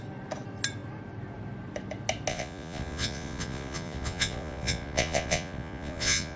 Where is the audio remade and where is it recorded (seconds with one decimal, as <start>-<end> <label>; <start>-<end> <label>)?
0.0-2.3 recorded; 2.3-6.4 remade